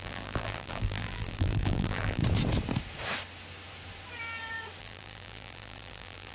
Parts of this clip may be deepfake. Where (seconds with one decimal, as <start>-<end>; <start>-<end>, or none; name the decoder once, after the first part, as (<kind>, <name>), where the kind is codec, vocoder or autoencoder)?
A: 0.0-2.2 (vocoder, BigVGAN v2); 4.8-6.3